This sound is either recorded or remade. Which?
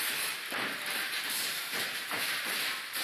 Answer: remade